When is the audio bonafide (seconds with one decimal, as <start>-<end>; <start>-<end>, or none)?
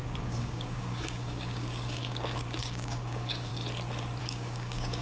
3.5-4.2